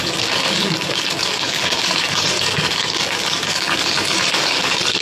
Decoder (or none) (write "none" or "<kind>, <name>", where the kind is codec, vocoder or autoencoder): codec, DAC